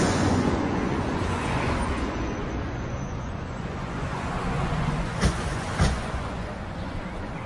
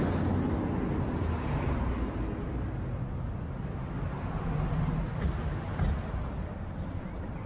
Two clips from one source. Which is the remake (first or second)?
first